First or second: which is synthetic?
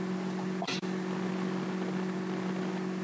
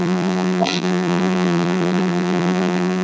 second